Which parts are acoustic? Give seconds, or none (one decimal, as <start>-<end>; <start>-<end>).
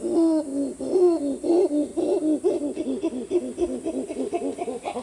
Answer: 1.9-5.0